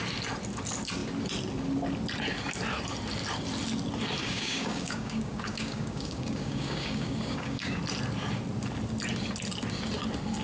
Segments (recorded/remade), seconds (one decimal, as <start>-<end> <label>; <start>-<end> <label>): 0.0-4.2 recorded; 4.2-7.8 remade; 7.8-10.4 recorded